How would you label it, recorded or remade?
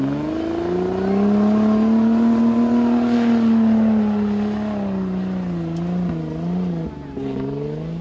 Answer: recorded